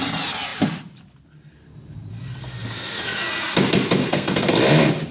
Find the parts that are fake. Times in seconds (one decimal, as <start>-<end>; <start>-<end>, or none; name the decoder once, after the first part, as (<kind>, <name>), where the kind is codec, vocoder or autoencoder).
4.0-4.5 (codec, SNAC)